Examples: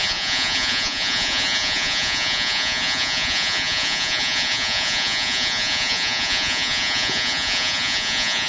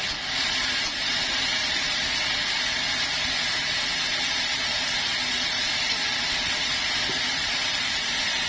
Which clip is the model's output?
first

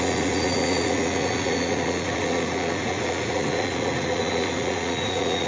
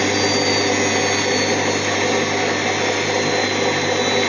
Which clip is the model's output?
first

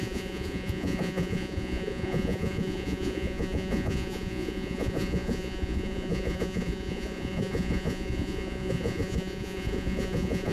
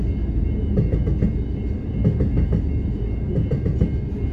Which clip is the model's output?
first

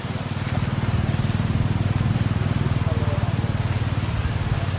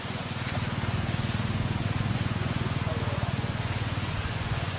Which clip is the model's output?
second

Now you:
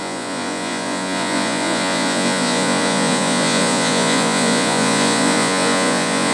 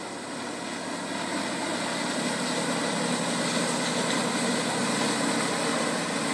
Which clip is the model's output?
first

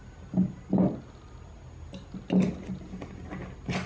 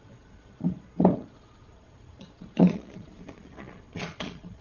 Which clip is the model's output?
second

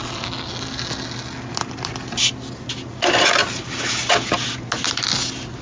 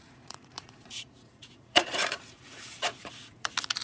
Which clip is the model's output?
second